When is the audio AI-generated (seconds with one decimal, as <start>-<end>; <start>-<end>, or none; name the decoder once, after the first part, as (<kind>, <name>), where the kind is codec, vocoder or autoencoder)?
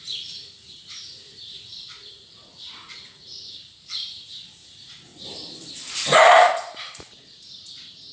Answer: 0.0-5.1 (vocoder, Vocos); 6.8-8.1